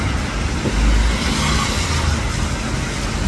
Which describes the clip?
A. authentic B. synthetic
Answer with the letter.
A